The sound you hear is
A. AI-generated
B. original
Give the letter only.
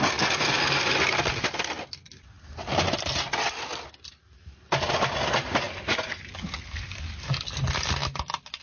B